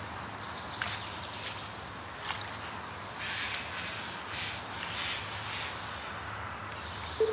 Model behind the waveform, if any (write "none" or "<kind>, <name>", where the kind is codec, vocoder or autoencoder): none